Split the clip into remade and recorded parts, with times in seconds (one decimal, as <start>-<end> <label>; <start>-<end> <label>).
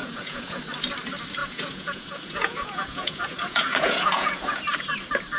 0.0-0.6 remade; 0.6-1.4 recorded; 1.4-4.6 remade; 4.6-5.4 recorded